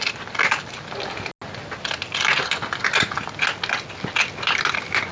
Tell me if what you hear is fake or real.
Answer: real